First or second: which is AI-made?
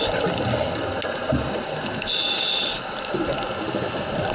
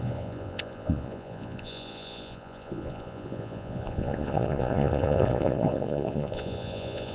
second